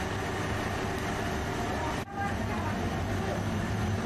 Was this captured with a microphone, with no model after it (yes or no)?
yes